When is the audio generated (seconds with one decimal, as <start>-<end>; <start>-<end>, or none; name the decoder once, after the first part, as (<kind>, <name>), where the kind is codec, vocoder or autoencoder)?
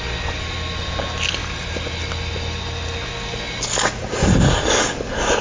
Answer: none